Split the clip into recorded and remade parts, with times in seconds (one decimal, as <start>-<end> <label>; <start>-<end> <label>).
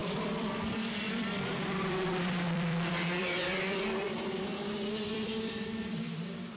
0.0-4.5 remade; 4.5-5.1 recorded; 5.1-6.6 remade